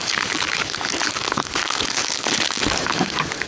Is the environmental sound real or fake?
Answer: fake